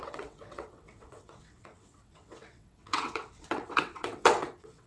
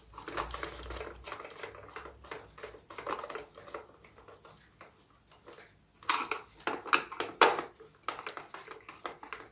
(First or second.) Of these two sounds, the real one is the second